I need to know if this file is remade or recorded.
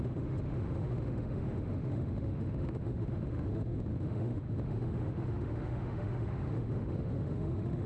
remade